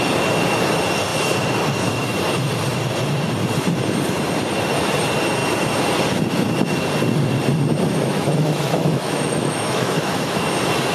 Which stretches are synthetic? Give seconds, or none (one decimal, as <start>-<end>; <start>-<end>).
7.9-10.4